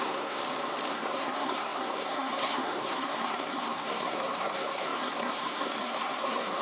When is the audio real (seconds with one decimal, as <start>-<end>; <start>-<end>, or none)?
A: 0.4-0.9